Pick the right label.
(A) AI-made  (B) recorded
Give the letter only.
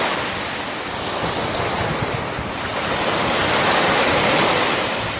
B